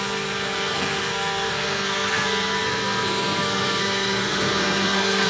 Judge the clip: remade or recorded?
remade